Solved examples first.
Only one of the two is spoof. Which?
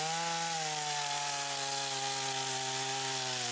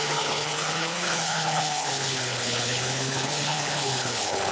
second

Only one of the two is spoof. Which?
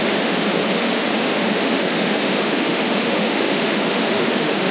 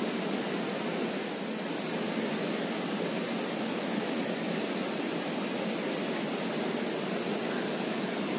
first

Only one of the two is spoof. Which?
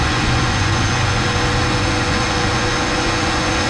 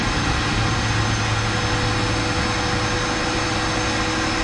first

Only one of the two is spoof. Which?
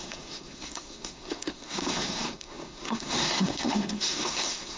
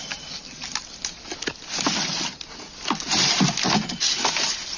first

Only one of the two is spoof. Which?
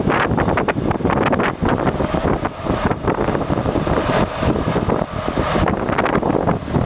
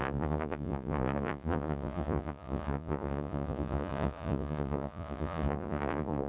second